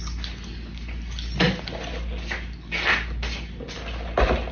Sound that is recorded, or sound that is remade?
recorded